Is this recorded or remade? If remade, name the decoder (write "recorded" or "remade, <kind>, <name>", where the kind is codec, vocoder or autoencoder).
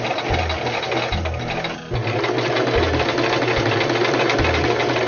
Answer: recorded